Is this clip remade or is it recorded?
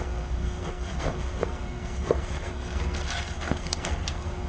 remade